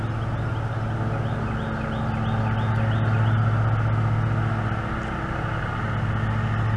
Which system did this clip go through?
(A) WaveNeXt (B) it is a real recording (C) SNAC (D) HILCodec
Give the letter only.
B